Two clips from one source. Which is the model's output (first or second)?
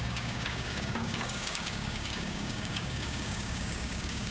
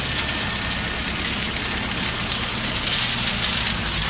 first